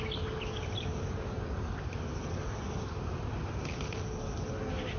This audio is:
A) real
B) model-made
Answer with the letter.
A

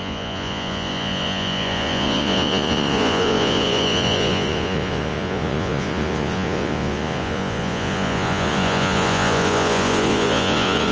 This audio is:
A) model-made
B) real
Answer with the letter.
A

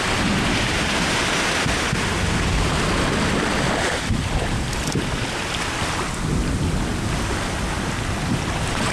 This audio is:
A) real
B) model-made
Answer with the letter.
A